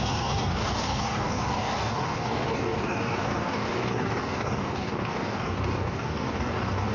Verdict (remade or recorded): remade